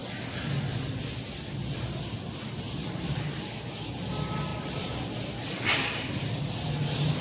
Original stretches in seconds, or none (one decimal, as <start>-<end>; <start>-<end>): 1.1-4.5; 6.5-7.2